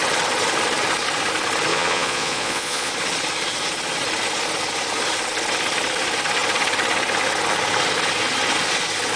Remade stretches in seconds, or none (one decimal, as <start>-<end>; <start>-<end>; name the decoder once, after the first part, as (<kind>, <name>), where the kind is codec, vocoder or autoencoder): 1.7-2.9 (vocoder, Vocos)

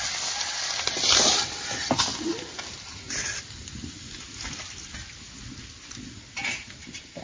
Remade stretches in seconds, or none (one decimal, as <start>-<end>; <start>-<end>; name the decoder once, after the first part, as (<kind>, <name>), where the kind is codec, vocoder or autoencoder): none

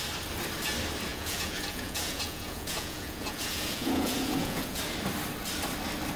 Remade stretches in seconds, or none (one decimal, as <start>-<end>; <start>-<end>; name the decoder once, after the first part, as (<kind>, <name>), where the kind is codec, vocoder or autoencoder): 1.1-4.8 (vocoder, Vocos)

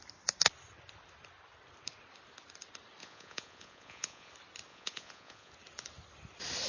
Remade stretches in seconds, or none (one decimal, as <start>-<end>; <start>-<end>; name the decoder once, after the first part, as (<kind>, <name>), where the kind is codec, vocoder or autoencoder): 3.0-4.3 (vocoder, Vocos); 4.7-5.5